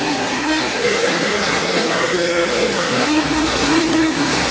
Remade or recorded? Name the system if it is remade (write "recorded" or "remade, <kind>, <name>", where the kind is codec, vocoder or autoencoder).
remade, codec, SNAC